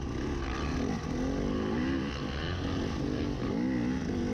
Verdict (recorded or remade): recorded